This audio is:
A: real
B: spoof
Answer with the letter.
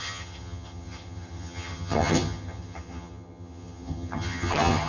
B